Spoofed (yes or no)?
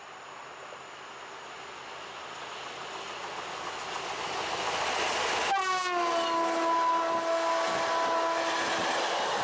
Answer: no